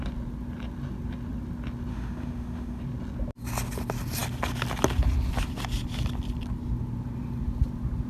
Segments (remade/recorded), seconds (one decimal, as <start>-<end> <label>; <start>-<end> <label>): 0.0-1.9 recorded; 1.9-2.8 remade; 2.8-8.1 recorded